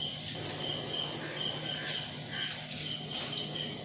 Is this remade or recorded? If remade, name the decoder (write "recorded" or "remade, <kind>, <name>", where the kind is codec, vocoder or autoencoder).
recorded